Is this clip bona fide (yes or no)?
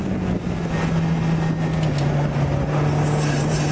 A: yes